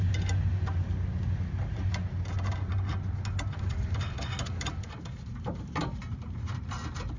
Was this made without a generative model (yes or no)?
yes